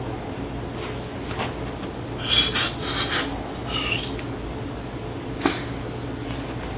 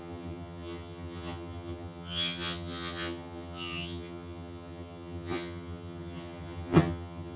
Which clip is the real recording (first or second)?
first